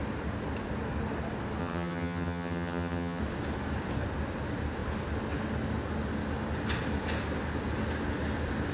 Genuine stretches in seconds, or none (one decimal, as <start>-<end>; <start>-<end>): 0.0-1.6; 3.2-8.7

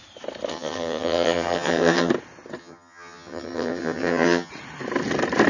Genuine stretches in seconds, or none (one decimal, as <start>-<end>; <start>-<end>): 0.0-0.5; 2.1-2.6; 4.5-5.5

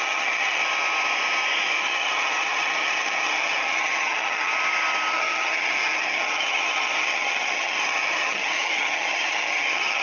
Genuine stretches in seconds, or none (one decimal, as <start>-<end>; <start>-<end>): 0.6-1.8; 4.5-5.1

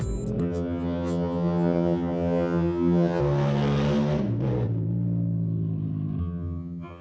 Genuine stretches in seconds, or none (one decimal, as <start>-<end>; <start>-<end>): 0.0-0.4; 3.2-6.2

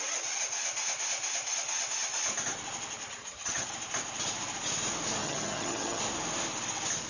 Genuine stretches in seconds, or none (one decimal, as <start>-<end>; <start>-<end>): 0.0-3.2; 3.7-5.2; 6.0-7.1